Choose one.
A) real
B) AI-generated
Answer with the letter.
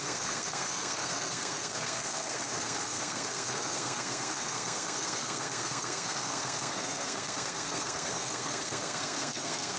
B